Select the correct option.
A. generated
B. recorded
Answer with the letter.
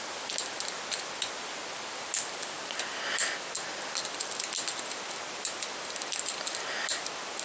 B